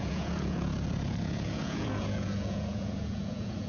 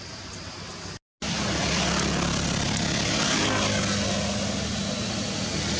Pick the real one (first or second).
second